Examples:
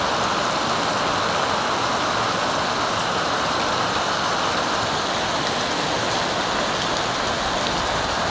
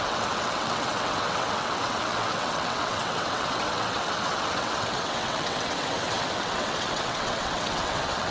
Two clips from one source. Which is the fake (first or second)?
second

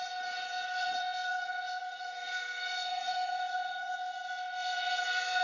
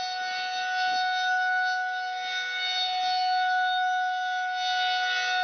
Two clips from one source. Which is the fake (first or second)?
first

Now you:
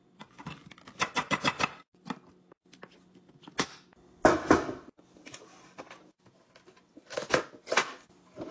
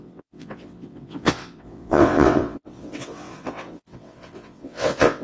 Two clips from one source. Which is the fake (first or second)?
second